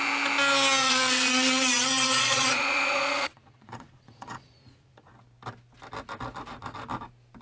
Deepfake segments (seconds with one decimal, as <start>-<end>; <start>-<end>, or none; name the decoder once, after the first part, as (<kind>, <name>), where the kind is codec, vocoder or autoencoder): 0.8-5.1 (vocoder, Vocos)